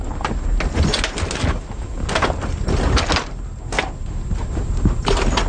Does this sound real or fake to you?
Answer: real